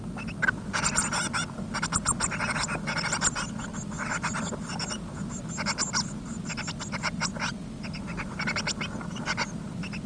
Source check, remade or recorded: recorded